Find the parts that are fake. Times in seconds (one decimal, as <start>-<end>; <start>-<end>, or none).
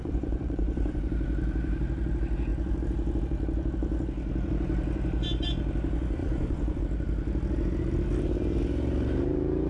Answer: 0.0-1.1; 6.2-6.8